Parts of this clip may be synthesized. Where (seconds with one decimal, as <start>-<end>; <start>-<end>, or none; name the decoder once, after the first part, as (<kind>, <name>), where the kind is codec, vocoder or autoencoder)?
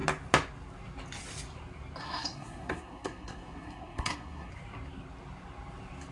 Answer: 2.0-4.5 (codec, SNAC)